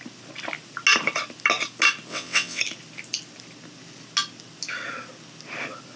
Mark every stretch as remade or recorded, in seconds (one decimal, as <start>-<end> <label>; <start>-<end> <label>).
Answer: 0.0-2.1 recorded; 2.1-2.6 remade; 2.6-6.0 recorded